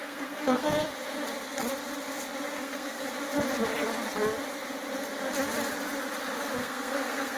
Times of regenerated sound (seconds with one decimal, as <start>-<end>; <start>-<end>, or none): 0.0-0.8; 2.6-3.1; 6.6-7.4